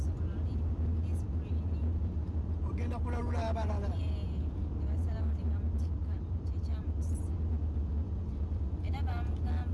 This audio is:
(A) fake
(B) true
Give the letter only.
B